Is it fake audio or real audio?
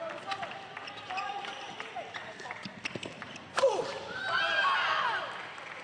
real